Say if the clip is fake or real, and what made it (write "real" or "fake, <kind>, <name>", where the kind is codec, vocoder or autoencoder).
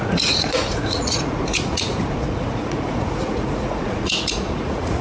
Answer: fake, vocoder, Vocos